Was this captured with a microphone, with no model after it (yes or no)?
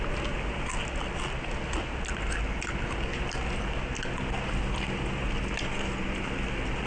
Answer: yes